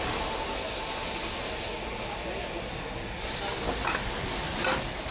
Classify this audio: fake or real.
real